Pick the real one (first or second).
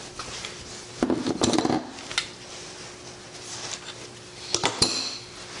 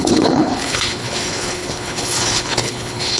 first